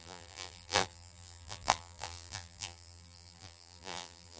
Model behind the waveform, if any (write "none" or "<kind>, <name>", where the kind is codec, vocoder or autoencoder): vocoder, BigVGAN v2